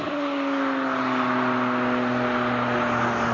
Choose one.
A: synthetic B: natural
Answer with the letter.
B